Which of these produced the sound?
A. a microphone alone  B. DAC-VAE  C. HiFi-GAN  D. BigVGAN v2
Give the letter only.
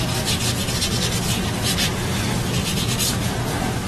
A